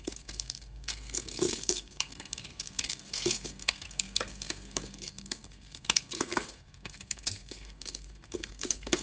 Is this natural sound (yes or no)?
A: no